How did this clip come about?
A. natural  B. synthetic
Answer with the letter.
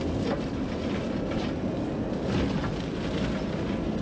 A